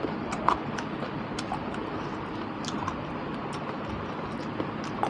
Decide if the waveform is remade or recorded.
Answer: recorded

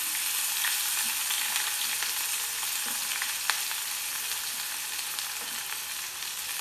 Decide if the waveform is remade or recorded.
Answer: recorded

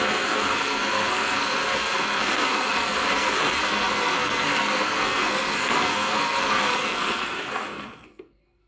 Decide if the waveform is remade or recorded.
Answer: remade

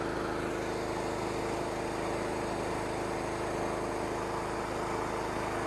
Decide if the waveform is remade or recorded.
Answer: recorded